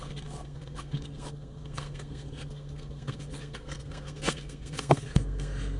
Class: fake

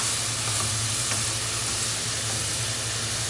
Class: real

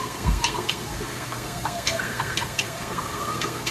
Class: fake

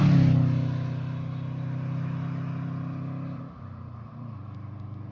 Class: real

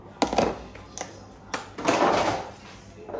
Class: real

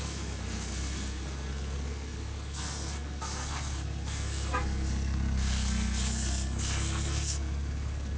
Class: fake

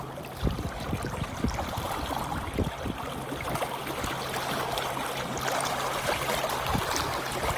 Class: real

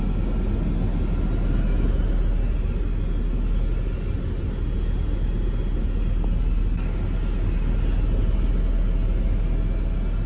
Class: real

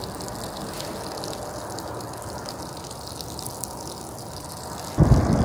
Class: real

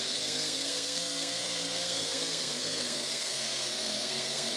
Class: fake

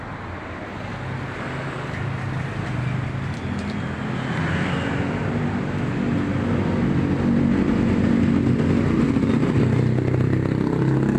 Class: real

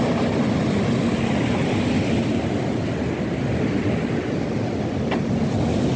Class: real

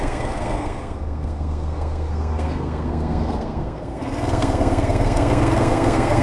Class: fake